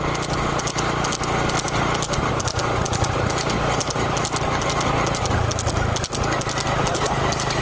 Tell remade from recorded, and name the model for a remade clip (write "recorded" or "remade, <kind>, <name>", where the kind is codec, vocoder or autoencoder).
recorded